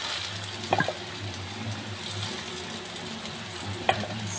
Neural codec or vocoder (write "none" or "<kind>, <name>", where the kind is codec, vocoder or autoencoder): none